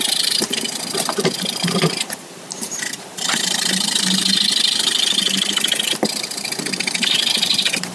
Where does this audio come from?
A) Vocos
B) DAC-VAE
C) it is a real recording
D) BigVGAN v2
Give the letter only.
D